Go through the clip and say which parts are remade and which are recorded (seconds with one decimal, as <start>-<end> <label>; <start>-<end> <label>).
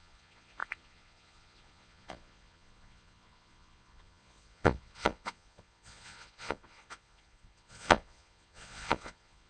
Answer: 0.0-9.5 remade